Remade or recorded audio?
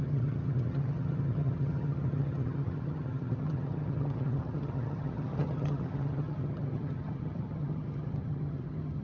remade